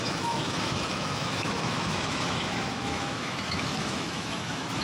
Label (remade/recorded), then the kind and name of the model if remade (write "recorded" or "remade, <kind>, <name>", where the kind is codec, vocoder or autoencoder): remade, autoencoder, DAC-VAE